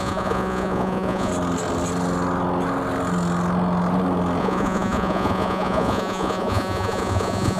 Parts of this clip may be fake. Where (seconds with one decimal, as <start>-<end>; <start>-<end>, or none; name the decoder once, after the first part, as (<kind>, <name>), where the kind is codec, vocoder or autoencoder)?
0.0-1.3 (vocoder, Vocos); 4.4-7.6